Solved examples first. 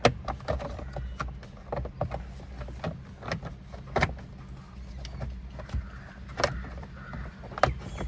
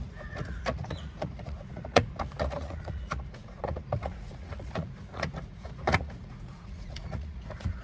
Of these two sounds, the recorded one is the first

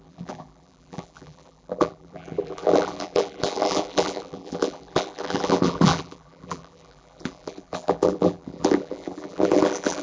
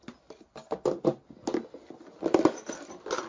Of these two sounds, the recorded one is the second